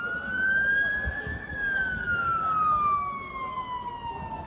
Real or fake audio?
real